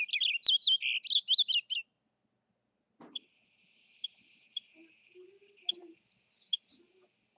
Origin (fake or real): real